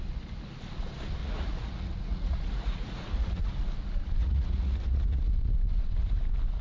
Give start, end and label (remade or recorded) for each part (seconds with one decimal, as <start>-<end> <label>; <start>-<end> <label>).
0.0-1.2 recorded; 1.2-3.5 remade; 3.5-4.2 recorded; 4.2-5.2 remade; 5.2-6.6 recorded

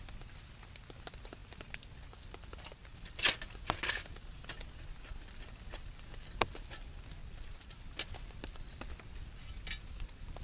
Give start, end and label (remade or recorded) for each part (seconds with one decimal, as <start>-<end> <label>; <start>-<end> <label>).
0.0-7.2 recorded; 7.2-7.8 remade; 7.8-10.4 recorded

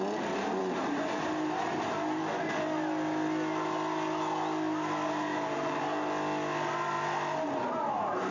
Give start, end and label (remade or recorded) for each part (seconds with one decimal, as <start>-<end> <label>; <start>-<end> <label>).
0.0-0.6 recorded; 0.6-2.4 remade; 2.4-5.3 recorded; 5.3-5.8 remade; 5.8-8.3 recorded

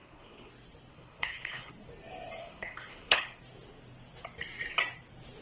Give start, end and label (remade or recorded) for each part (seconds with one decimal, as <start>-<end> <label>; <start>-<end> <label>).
0.0-0.5 remade; 0.5-0.9 recorded; 0.9-1.7 remade; 1.7-2.4 recorded; 2.4-3.4 remade; 3.4-5.4 recorded

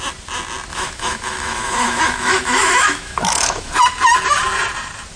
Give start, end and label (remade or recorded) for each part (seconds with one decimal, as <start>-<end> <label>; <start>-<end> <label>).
0.0-0.7 recorded; 0.7-3.8 remade; 3.8-5.2 recorded

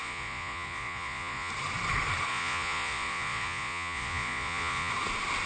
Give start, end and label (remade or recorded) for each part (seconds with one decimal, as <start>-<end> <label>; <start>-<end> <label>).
0.0-1.5 remade; 1.5-2.3 recorded; 2.3-4.9 remade; 4.9-5.5 recorded

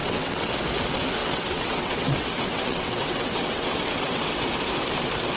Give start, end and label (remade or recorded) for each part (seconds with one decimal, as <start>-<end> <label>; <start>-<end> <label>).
0.0-0.5 remade; 0.5-1.2 recorded; 1.2-4.4 remade; 4.4-5.4 recorded